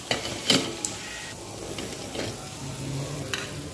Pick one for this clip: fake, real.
real